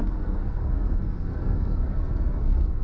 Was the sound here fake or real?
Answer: fake